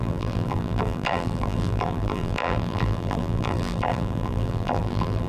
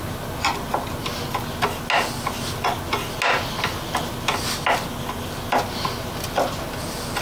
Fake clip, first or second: first